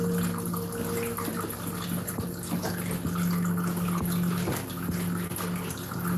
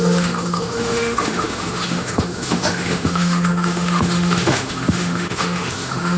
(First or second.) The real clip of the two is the first